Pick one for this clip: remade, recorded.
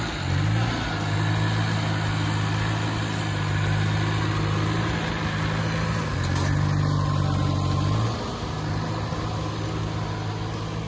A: recorded